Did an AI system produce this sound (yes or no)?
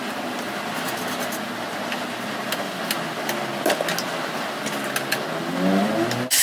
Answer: no